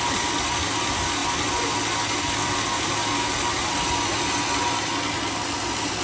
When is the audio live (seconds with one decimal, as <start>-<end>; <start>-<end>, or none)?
0.0-6.0